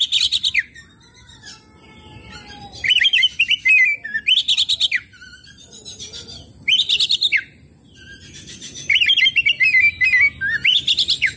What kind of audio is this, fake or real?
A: real